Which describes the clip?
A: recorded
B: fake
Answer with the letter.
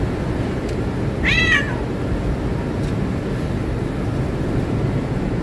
A